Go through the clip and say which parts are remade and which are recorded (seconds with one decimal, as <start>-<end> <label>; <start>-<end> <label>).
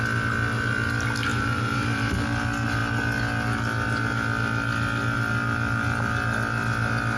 0.0-1.3 recorded; 1.3-2.1 remade; 2.1-7.2 recorded